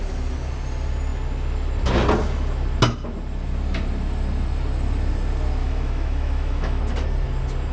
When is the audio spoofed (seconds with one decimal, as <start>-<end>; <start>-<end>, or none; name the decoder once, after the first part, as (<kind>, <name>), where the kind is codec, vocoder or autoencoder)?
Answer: 5.6-6.8 (autoencoder, DAC-VAE)